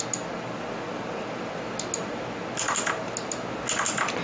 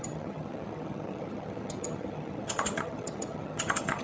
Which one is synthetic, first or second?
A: second